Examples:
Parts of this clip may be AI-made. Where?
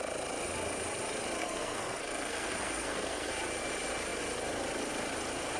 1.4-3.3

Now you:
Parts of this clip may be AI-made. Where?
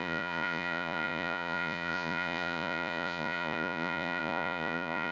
0.0-5.1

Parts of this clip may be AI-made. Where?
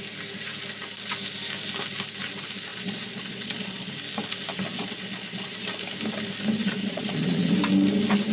2.7-3.9; 4.7-5.7; 6.6-7.5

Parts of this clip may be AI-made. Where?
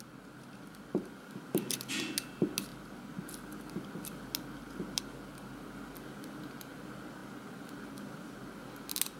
none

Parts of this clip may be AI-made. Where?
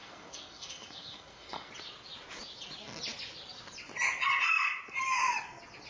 0.0-1.7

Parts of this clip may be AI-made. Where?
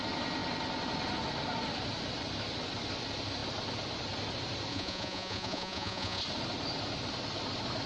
4.7-6.2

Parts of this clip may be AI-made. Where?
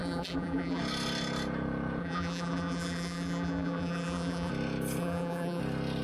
0.0-0.8; 2.0-4.5; 5.0-5.6